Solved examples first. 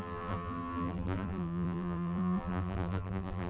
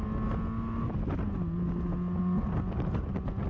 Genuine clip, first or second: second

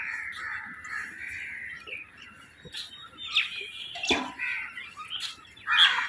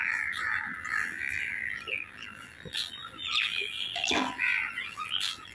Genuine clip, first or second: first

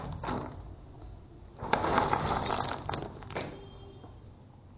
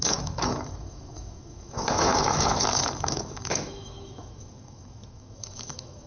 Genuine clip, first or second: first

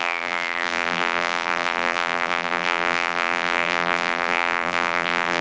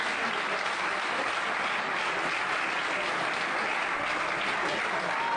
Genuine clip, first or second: second